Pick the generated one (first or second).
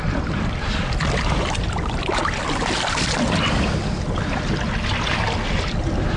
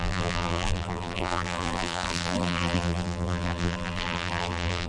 second